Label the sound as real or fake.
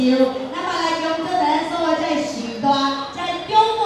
real